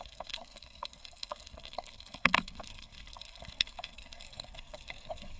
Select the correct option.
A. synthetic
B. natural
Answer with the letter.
A